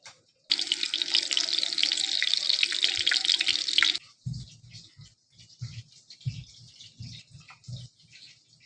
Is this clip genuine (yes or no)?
yes